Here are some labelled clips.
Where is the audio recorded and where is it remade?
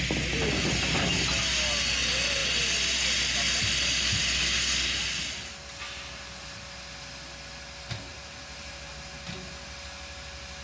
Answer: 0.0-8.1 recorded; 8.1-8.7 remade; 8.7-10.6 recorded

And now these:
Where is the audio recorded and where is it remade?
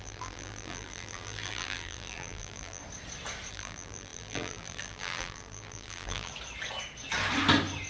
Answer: 0.0-2.8 remade; 2.8-3.5 recorded; 3.5-6.3 remade; 6.3-7.9 recorded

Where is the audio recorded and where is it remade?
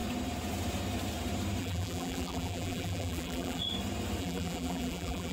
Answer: 0.0-1.6 recorded; 1.6-3.6 remade; 3.6-4.2 recorded; 4.2-5.3 remade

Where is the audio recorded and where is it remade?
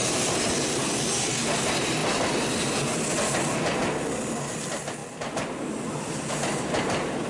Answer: 0.0-1.3 remade; 1.3-7.3 recorded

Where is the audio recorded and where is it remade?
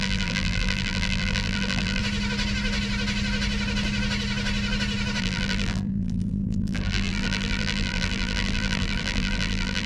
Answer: 0.0-2.0 remade; 2.0-5.2 recorded; 5.2-9.9 remade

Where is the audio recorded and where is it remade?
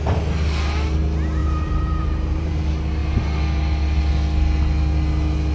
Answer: 0.0-1.4 recorded; 1.4-2.6 remade; 2.6-5.5 recorded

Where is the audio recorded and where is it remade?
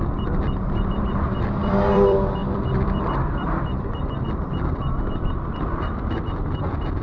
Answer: 0.0-7.0 remade